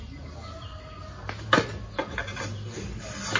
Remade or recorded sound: recorded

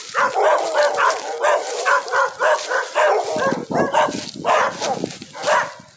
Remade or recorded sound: recorded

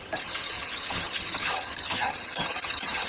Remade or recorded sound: remade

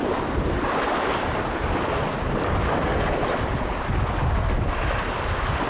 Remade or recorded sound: recorded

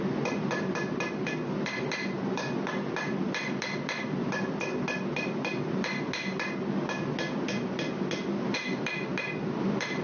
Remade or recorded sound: recorded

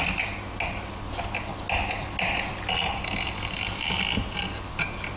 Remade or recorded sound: recorded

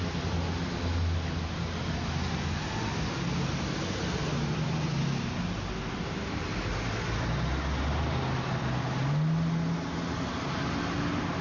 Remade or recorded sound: recorded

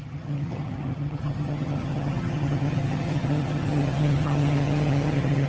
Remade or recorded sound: remade